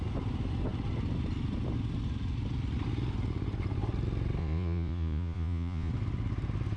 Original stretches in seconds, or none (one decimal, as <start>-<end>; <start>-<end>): 0.0-4.4; 5.9-6.8